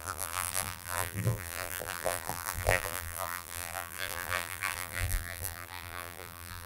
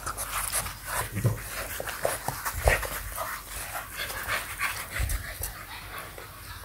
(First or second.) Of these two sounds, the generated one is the first